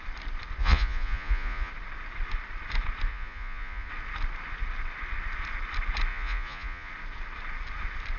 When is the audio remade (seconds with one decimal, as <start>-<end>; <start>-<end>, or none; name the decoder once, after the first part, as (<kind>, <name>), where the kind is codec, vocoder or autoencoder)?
0.6-1.7 (vocoder, Vocos); 3.1-3.9; 6.1-6.9

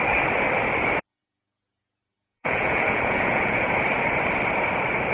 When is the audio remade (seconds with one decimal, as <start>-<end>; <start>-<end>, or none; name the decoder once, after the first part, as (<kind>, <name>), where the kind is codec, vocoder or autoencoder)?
1.1-3.7 (vocoder, Vocos)

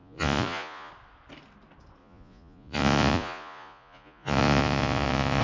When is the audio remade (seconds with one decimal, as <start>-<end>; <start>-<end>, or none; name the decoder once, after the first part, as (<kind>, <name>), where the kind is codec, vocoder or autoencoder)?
0.0-0.9 (vocoder, Vocos); 2.0-5.4

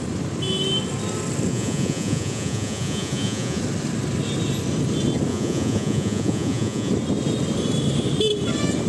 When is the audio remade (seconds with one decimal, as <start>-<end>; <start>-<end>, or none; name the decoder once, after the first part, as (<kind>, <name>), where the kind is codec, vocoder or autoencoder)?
1.5-3.6 (vocoder, Vocos); 5.3-6.9

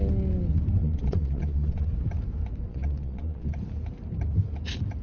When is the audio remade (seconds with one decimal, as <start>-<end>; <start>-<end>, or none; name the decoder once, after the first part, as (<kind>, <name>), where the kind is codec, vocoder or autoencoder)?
0.8-1.9 (vocoder, Vocos); 2.7-3.6